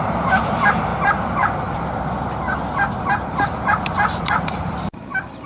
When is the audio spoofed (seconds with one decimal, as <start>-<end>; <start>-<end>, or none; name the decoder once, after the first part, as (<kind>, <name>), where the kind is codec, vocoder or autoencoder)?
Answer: 0.0-0.9 (vocoder, BigVGAN v2); 4.2-5.5